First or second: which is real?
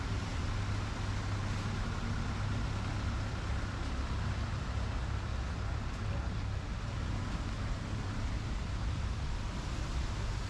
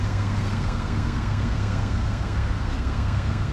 first